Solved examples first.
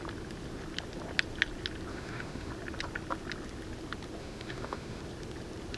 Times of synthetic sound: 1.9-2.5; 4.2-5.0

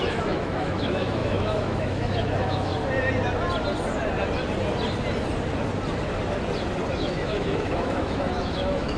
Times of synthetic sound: 0.0-2.7; 6.9-9.0

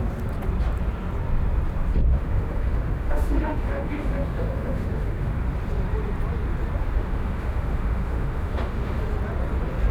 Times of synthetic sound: 2.1-5.3; 6.8-9.0

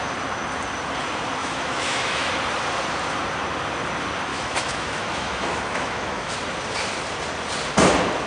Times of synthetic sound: 1.4-2.3; 4.3-6.3

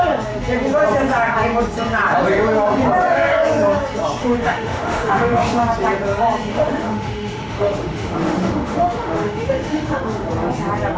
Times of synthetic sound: 4.2-5.6; 6.5-10.3

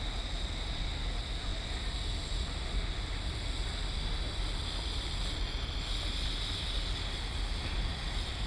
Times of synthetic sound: none

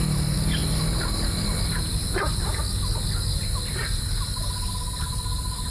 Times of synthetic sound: none

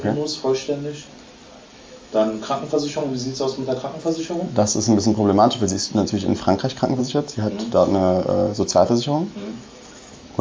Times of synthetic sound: 0.0-0.6; 1.7-3.0; 4.0-6.3; 7.0-10.4